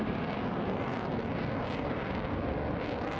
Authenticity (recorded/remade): recorded